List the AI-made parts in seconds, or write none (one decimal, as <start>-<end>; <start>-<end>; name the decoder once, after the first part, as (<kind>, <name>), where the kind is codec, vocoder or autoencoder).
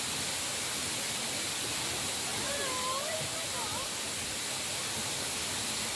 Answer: none